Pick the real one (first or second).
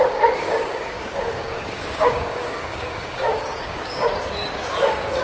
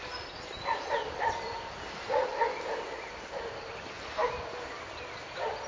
second